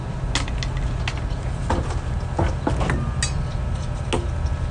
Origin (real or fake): real